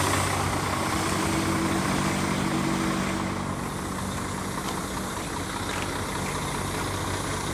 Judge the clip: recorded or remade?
recorded